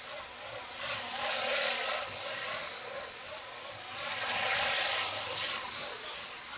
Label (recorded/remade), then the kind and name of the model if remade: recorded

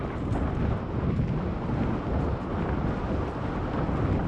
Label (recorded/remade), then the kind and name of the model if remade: recorded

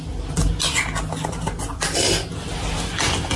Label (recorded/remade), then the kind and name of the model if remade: recorded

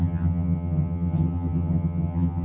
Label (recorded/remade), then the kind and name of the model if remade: remade, vocoder, HiFi-GAN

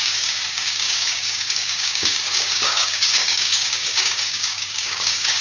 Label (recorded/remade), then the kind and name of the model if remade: remade, codec, DAC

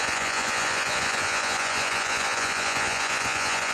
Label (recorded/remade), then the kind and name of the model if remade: remade, vocoder, Vocos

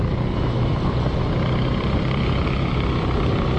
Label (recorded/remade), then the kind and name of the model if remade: recorded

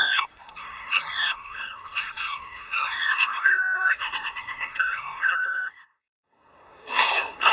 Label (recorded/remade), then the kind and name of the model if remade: remade, codec, SNAC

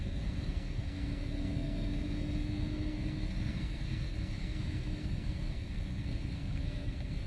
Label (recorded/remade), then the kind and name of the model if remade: remade, codec, SNAC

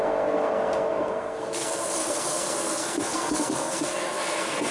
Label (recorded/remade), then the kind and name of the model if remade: remade, codec, SNAC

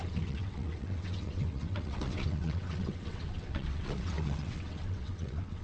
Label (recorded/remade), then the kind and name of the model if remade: remade, vocoder, WaveNeXt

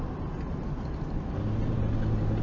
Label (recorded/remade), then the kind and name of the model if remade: recorded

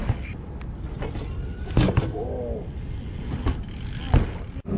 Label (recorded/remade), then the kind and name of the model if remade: recorded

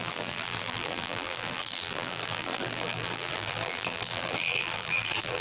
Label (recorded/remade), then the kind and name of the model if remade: remade, vocoder, BigVGAN v2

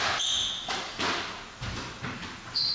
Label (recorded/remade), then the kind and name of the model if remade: recorded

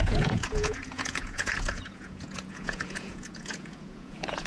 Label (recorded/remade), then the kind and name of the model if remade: remade, vocoder, Vocos